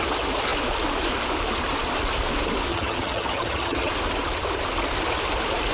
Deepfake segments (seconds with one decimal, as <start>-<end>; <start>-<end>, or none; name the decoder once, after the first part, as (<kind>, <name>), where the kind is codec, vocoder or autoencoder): 2.7-3.9 (vocoder, HiFi-GAN)